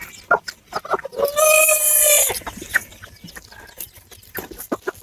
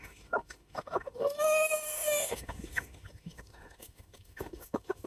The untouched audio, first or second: first